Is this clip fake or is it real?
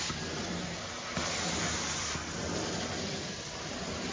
real